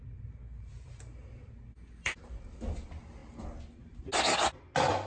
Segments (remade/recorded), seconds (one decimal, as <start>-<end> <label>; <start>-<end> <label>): 0.0-5.1 recorded